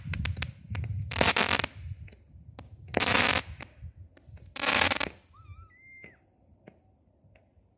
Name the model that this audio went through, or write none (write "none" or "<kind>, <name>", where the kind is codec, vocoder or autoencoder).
none